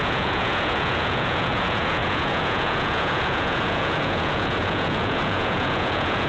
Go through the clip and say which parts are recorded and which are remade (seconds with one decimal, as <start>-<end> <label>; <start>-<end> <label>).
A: 0.0-6.3 remade